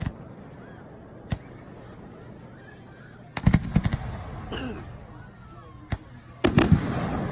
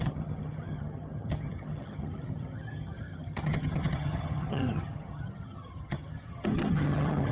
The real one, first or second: first